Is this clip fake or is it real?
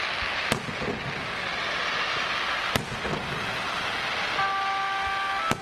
real